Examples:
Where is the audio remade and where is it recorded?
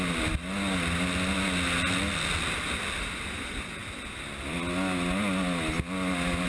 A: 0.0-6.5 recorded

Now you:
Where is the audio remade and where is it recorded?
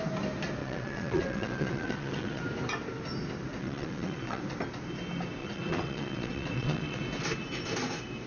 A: 0.0-0.6 recorded; 0.6-2.4 remade; 2.4-3.6 recorded; 3.6-4.4 remade; 4.4-5.4 recorded; 5.4-7.0 remade; 7.0-8.3 recorded